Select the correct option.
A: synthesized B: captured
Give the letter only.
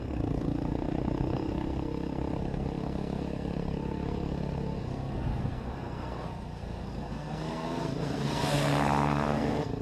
A